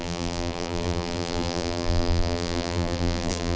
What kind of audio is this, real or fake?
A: fake